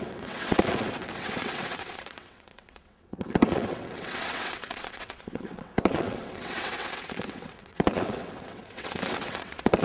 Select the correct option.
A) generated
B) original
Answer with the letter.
A